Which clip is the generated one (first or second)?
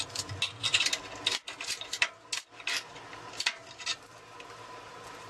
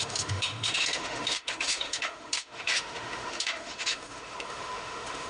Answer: second